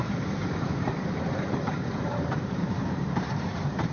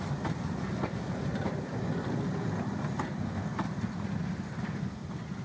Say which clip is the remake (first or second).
first